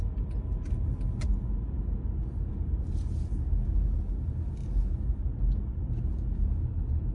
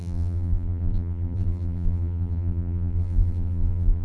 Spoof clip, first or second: second